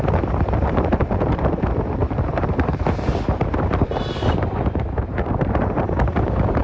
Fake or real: fake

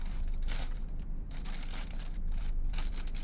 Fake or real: fake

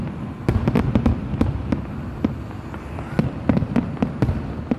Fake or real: real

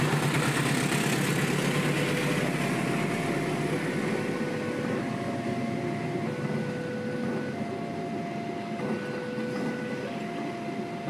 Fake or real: real